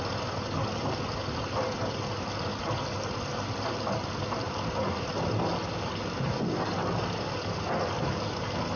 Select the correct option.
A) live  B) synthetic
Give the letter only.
A